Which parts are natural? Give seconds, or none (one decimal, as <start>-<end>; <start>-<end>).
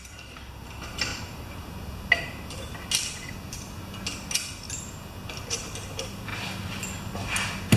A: 1.1-5.3; 6.3-7.8